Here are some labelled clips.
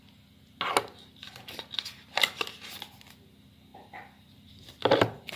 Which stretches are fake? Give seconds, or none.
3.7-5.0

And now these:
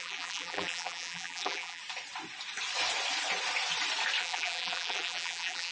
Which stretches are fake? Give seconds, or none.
0.0-1.8; 4.2-5.7

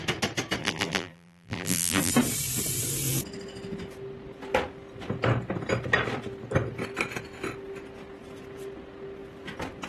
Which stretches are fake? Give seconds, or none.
0.6-2.1

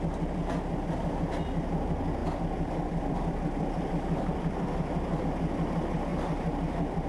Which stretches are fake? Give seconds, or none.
2.2-5.2; 6.1-7.1